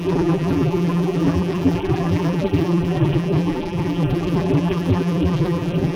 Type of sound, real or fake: fake